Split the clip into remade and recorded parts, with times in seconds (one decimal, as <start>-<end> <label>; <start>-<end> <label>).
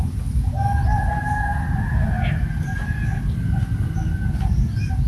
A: 0.0-5.1 recorded